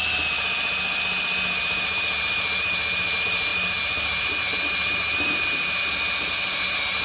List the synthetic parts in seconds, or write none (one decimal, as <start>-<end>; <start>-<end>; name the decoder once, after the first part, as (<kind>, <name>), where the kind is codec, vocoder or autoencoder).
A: none

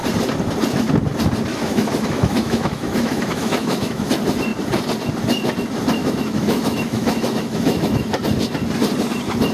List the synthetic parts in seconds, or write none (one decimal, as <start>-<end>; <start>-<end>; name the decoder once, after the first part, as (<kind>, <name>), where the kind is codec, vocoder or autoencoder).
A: 1.5-4.1 (autoencoder, DAC-VAE); 6.0-8.1

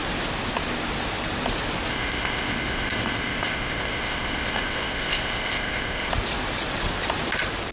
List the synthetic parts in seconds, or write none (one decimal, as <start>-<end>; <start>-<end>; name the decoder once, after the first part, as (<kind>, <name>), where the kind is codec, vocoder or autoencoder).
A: 1.9-6.1 (codec, ZipCodec)

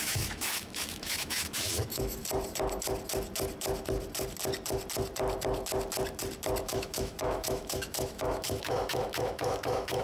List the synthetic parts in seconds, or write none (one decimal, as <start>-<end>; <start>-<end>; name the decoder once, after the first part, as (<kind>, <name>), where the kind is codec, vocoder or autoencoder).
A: 0.0-2.2 (autoencoder, DAC-VAE); 6.6-10.0

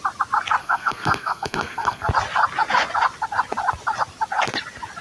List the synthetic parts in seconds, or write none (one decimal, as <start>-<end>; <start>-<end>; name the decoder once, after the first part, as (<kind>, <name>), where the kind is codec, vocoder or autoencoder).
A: 0.6-2.1 (codec, SNAC)

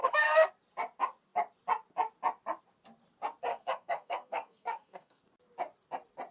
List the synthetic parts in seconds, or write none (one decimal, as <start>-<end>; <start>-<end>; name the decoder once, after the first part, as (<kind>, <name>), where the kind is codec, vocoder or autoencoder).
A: 0.0-0.5 (codec, SNAC); 3.5-5.2